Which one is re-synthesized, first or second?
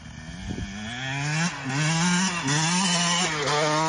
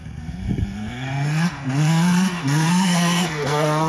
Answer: second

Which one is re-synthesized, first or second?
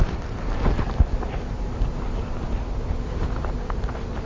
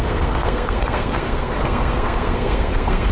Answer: second